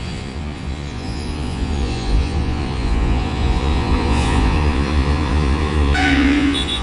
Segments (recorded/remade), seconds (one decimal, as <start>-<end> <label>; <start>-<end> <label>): 0.0-6.8 remade